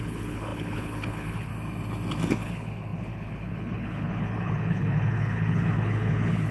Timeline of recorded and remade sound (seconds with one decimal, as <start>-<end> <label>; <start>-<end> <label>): 0.0-1.5 remade; 1.5-2.3 recorded; 2.3-6.5 remade